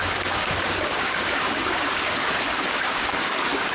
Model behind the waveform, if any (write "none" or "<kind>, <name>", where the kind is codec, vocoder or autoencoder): codec, DAC